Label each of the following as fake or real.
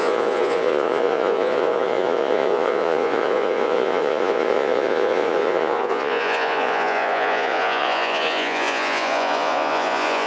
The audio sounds fake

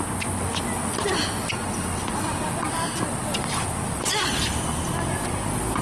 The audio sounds real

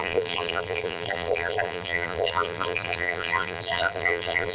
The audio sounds fake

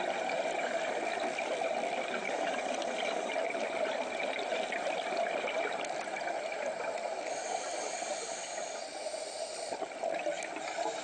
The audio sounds real